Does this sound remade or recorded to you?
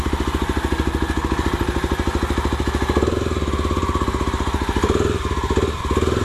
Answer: recorded